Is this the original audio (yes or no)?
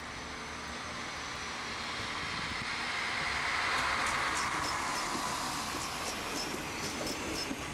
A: yes